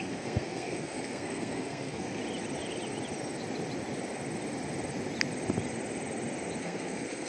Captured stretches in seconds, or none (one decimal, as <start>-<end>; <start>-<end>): 2.2-6.6